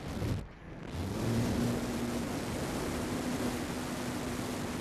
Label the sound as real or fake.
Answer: real